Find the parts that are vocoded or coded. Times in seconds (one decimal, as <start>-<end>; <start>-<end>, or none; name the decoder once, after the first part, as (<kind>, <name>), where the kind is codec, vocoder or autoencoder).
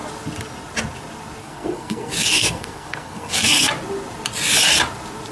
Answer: 1.4-3.7 (codec, SNAC)